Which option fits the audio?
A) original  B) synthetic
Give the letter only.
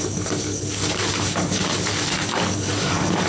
B